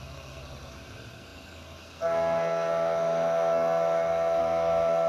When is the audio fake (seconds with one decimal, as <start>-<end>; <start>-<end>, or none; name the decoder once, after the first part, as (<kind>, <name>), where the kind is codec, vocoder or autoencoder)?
0.0-5.1 (codec, SNAC)